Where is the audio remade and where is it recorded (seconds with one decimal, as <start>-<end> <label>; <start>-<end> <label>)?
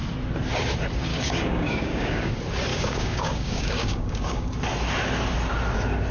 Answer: 0.0-1.1 recorded; 1.1-2.3 remade; 2.3-2.7 recorded; 2.7-4.5 remade; 4.5-6.1 recorded